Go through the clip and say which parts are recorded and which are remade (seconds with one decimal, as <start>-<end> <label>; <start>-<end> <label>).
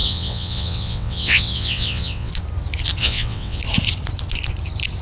0.0-2.3 remade; 2.3-3.0 recorded; 3.0-3.6 remade; 3.6-5.0 recorded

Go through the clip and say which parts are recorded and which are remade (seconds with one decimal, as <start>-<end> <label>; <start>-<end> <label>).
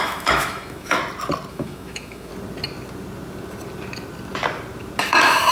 0.0-1.0 remade; 1.0-1.5 recorded; 1.5-2.3 remade; 2.3-5.0 recorded; 5.0-5.5 remade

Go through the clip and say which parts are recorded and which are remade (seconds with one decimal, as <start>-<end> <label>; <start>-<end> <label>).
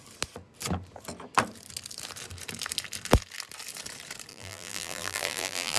0.0-4.3 recorded; 4.3-5.8 remade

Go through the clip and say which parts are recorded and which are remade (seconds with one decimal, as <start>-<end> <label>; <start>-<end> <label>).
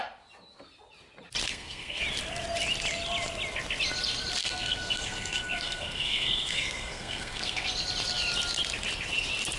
0.0-1.5 recorded; 1.5-2.0 remade; 2.0-4.4 recorded; 4.4-7.7 remade; 7.7-9.6 recorded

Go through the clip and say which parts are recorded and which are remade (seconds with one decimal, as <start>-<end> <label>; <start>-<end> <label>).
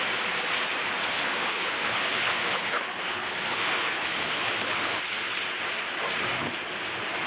0.0-1.1 recorded; 1.1-5.0 remade; 5.0-7.3 recorded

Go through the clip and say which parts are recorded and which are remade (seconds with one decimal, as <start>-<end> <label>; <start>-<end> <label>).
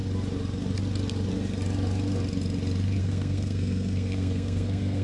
0.0-3.0 recorded; 3.0-5.0 remade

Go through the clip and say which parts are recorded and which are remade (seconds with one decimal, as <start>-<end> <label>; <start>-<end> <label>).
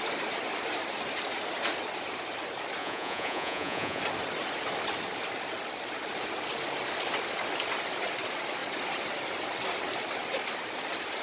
0.0-2.8 recorded; 2.8-4.0 remade; 4.0-11.2 recorded